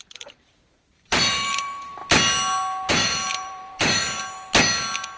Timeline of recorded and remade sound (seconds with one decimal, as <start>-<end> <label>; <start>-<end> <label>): 0.0-2.0 remade; 2.0-2.9 recorded; 2.9-4.0 remade; 4.0-5.2 recorded